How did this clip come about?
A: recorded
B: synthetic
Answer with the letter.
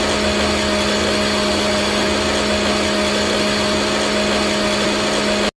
A